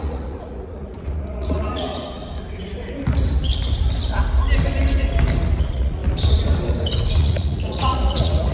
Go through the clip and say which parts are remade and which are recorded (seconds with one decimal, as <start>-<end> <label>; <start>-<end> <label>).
0.0-2.2 remade; 2.2-5.6 recorded; 5.6-6.0 remade; 6.0-7.2 recorded; 7.2-8.5 remade